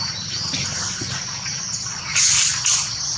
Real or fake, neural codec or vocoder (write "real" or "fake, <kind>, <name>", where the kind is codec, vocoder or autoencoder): real